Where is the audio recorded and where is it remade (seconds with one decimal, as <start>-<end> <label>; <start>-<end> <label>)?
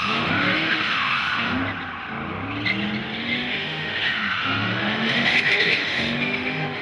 0.0-1.6 remade; 1.6-3.2 recorded; 3.2-6.8 remade